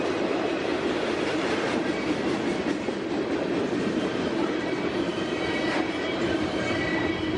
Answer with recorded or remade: remade